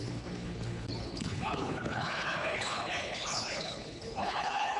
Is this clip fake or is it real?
fake